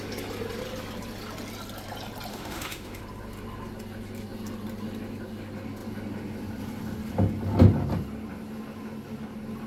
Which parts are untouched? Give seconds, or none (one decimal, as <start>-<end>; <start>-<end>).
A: 0.0-2.3; 3.0-9.7